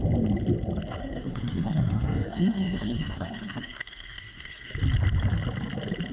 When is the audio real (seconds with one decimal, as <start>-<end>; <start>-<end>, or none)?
0.0-1.0; 4.7-6.1